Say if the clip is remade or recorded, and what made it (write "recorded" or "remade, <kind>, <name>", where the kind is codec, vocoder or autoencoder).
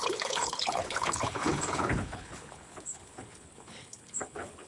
remade, codec, HILCodec